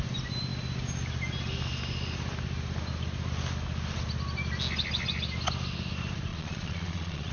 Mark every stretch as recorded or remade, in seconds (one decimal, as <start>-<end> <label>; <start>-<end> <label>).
0.0-6.3 recorded; 6.3-7.3 remade